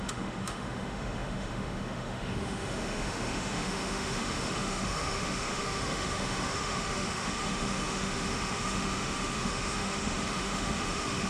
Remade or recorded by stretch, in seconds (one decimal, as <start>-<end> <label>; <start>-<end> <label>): 0.0-11.3 remade